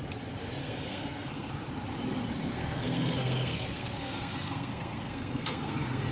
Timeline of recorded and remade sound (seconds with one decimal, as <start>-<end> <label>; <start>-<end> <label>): 0.0-0.6 recorded; 0.6-1.5 remade; 1.5-2.5 recorded; 2.5-6.1 remade